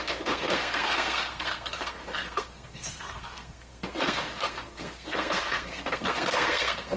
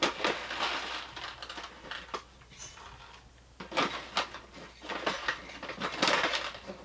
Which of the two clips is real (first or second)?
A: second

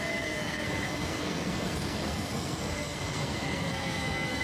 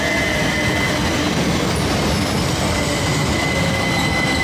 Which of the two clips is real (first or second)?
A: second